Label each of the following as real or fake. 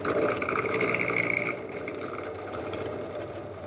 real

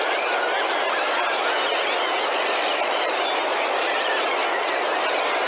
real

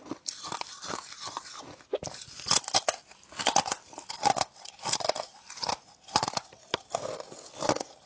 real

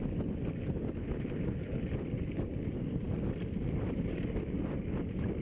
real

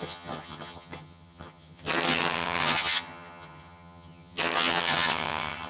fake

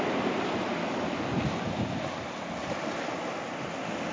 real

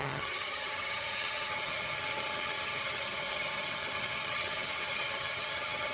fake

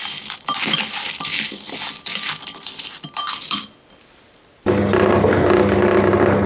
real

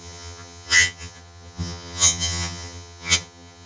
fake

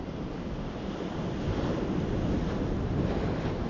real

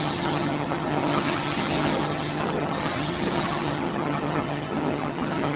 fake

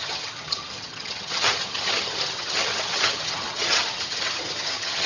fake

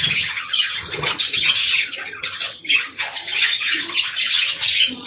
fake